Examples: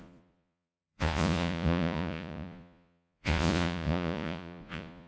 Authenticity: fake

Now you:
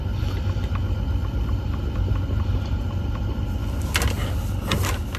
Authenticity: real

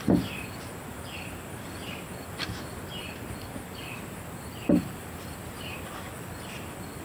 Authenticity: real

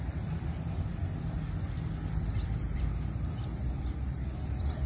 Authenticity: fake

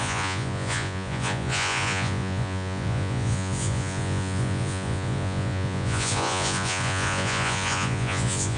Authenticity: fake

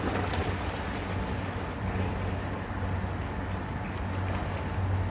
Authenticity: real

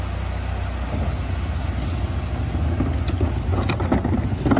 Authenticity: real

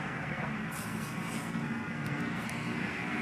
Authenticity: fake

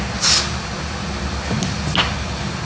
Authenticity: real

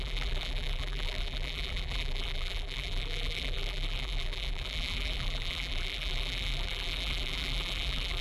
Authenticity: fake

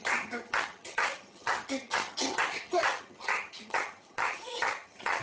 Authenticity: fake